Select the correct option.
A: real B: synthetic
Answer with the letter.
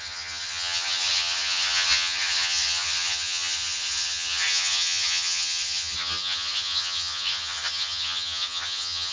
B